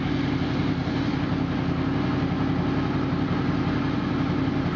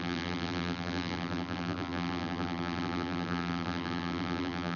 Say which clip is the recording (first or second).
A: first